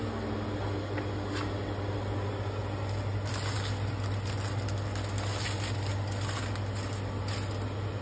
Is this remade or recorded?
recorded